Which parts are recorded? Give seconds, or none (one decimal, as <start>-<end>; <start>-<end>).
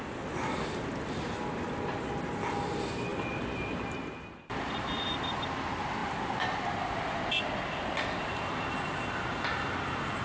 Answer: 0.0-10.2